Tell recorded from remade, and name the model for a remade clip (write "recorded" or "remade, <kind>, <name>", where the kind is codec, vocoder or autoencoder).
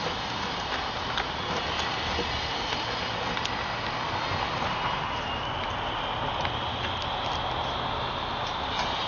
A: recorded